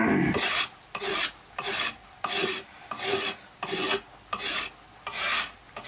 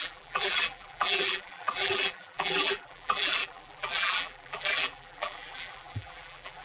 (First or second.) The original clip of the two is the first